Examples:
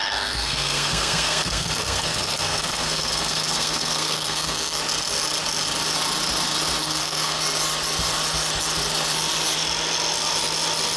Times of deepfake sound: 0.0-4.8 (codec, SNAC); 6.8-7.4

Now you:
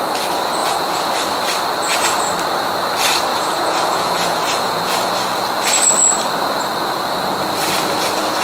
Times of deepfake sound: 0.6-1.1 (vocoder, Vocos); 3.3-5.1

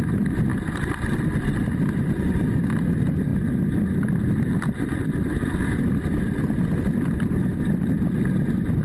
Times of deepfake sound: none

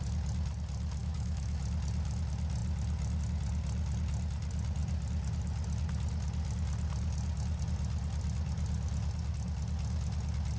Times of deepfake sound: 1.0-1.6 (autoencoder, DAC-VAE)

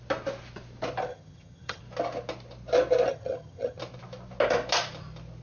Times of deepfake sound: 1.1-1.8 (vocoder, HiFi-GAN); 3.1-3.8

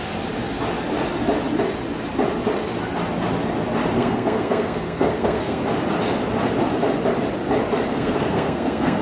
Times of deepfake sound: 4.0-5.6 (codec, SNAC); 7.9-9.0

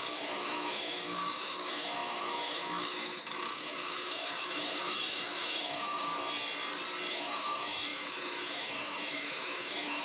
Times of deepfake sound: 0.0-6.1 (autoencoder, DAC-VAE); 7.1-10.0